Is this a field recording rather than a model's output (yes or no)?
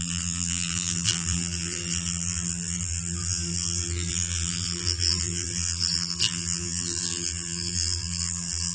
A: no